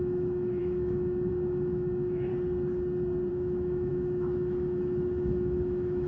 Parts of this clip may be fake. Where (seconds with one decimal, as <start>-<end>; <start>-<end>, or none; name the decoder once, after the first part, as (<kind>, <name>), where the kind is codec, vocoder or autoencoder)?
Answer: 0.0-2.3 (autoencoder, DAC-VAE); 3.3-6.1